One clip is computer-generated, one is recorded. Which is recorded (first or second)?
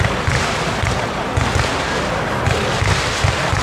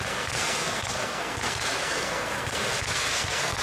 first